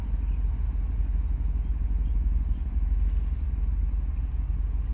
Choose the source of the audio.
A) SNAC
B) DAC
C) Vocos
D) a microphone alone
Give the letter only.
D